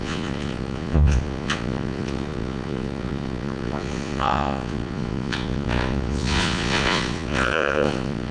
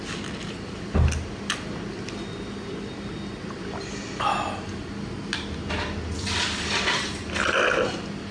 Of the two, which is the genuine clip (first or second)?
second